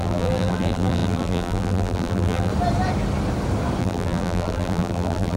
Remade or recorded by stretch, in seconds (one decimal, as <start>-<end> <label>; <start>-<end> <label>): 0.0-2.5 remade; 2.5-3.8 recorded; 3.8-5.4 remade